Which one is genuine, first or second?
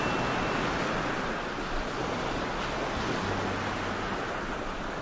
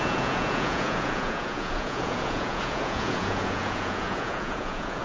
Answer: first